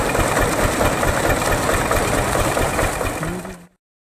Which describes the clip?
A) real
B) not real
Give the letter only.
A